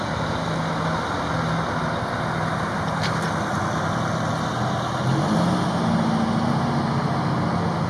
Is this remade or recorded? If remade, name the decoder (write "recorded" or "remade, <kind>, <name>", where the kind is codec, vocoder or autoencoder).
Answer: recorded